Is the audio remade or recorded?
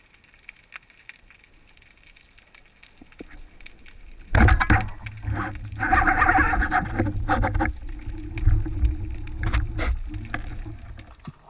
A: recorded